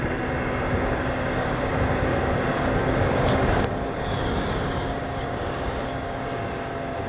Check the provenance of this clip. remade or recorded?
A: remade